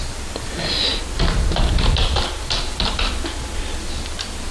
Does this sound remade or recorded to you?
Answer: recorded